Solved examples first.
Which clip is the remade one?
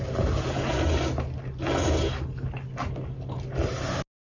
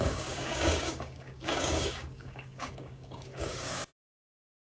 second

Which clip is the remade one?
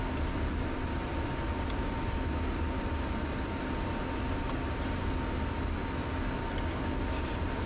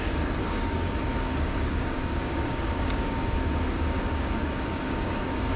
second